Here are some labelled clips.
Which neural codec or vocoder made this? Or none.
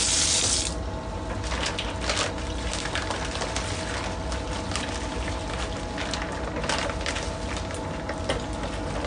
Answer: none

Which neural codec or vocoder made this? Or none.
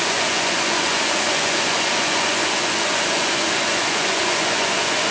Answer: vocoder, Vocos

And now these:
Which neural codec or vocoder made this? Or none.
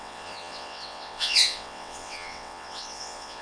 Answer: vocoder, WaveNeXt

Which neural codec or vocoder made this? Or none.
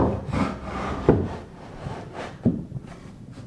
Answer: vocoder, BigVGAN v2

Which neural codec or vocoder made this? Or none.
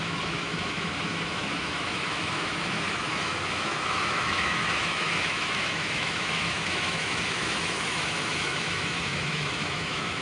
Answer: autoencoder, DAC-VAE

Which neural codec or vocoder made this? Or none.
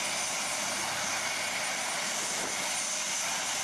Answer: none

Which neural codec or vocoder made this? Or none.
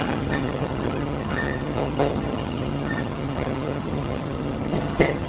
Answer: vocoder, HiFi-GAN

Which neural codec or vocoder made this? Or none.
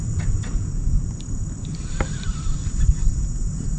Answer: none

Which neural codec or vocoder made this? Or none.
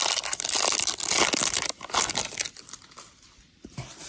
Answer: none